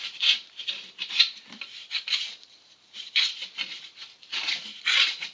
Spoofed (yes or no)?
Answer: yes